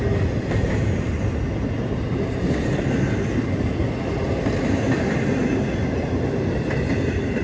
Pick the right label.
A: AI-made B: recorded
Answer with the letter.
B